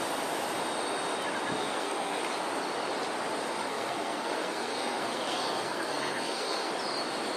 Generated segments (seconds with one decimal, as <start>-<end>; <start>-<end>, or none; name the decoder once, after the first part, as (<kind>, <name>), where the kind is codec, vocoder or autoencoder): 1.6-2.2 (codec, SNAC); 3.6-6.7